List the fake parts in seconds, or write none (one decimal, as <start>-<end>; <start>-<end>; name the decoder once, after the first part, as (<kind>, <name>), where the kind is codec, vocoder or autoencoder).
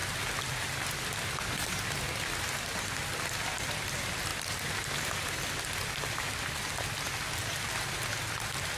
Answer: none